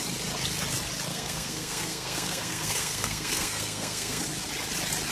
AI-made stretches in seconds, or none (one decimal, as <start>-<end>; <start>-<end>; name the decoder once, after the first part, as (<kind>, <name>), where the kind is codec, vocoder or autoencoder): 1.1-4.2 (codec, SNAC)